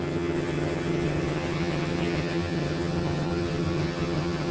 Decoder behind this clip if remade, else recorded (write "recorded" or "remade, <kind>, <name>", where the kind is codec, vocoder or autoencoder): remade, vocoder, HiFi-GAN